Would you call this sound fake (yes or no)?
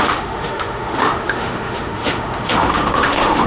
yes